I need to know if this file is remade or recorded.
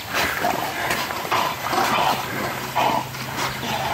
recorded